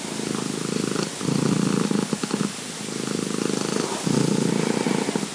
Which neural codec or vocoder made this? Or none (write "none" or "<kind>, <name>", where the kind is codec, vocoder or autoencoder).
none